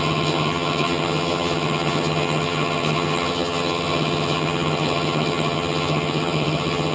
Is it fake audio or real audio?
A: fake